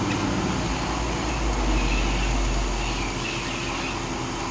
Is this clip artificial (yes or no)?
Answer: no